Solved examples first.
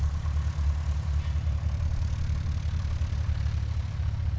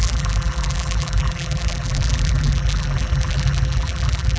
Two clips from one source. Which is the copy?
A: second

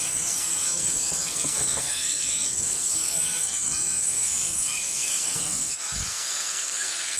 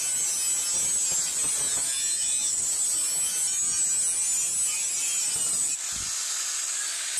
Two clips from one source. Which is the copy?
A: first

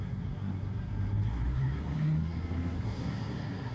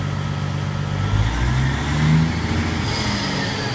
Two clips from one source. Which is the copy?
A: first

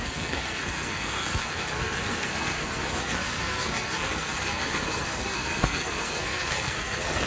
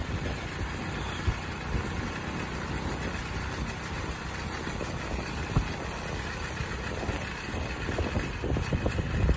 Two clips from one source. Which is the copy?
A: first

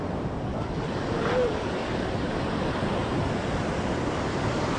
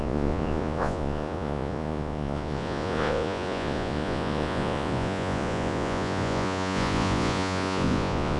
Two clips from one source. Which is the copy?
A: second